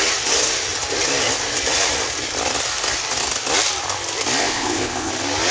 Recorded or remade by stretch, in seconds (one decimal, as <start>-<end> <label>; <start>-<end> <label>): 0.0-4.4 recorded; 4.4-5.1 remade; 5.1-5.5 recorded